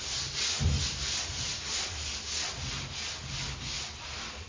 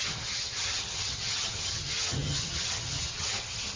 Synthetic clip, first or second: second